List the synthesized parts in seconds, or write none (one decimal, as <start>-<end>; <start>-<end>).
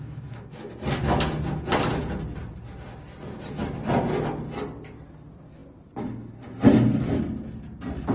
none